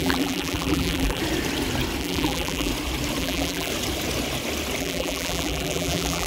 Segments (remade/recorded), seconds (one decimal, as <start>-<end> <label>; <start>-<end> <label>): 0.0-1.2 remade; 1.2-2.0 recorded; 2.0-2.7 remade; 2.7-3.2 recorded; 3.2-3.7 remade; 3.7-4.8 recorded; 4.8-6.3 remade